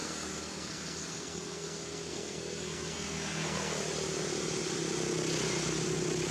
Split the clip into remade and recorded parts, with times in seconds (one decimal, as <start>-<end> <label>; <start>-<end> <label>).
0.0-3.8 remade; 3.8-6.3 recorded